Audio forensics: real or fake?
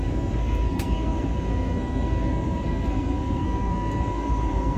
fake